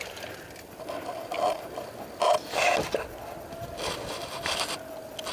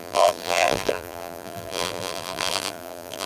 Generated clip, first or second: second